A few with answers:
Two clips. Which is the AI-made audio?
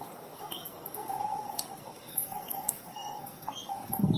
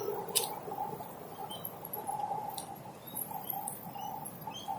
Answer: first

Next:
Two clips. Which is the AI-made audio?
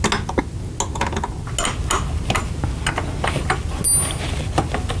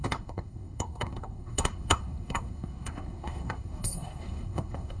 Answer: second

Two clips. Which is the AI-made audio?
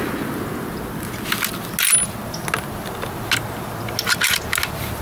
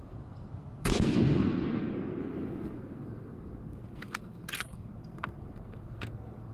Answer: second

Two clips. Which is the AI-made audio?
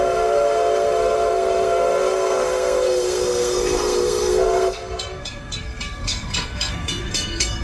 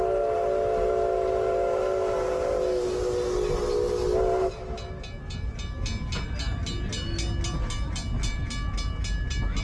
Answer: first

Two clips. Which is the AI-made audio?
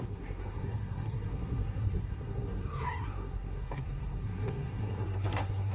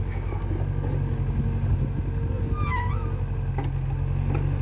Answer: first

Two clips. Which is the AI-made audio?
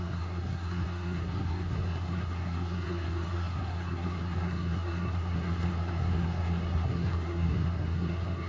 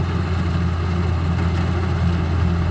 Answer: first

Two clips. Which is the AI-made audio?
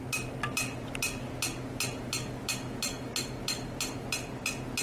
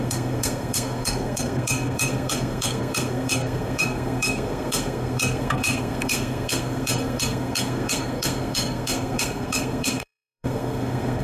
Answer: second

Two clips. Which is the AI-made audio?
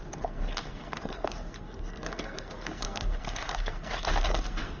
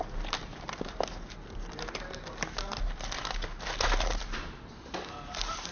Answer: first